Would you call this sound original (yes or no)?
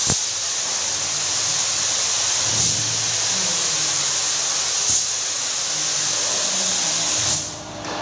yes